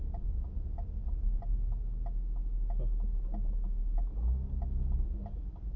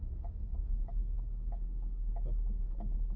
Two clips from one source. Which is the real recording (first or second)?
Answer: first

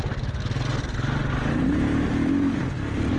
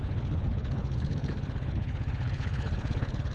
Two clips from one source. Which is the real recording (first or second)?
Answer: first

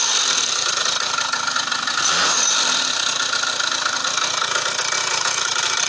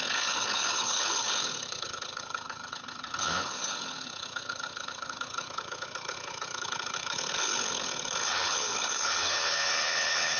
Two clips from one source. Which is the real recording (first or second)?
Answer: first